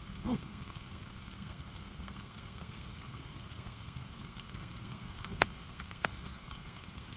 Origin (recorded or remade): remade